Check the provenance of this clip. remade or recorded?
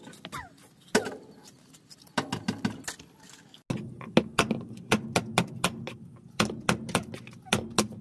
recorded